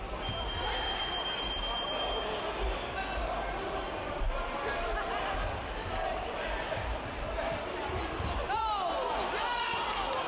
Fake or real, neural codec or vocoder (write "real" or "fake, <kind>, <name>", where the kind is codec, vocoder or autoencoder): real